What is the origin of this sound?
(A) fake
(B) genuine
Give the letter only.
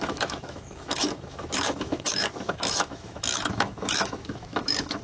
A